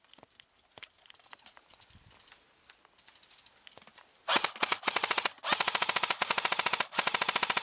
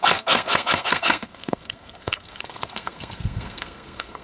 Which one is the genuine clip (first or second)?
first